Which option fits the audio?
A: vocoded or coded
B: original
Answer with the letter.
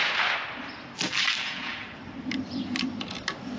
B